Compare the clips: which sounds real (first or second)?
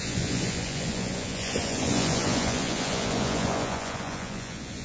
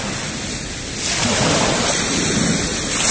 second